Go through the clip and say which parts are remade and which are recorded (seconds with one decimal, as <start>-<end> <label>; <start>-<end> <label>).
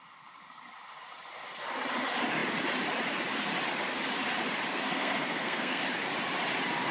0.0-4.7 recorded; 4.7-5.8 remade; 5.8-6.9 recorded